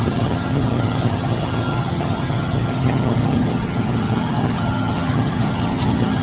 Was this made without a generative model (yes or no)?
no